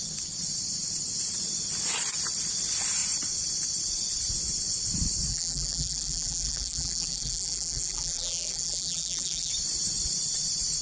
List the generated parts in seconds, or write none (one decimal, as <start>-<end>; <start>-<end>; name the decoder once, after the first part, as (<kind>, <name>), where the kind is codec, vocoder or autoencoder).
5.3-9.5 (vocoder, BigVGAN v2)